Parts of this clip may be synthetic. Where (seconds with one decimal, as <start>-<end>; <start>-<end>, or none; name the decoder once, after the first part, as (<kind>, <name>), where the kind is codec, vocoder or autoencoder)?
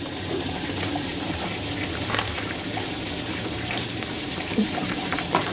0.0-5.5 (vocoder, BigVGAN v2)